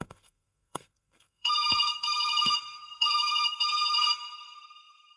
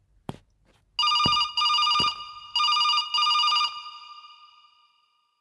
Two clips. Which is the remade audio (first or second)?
first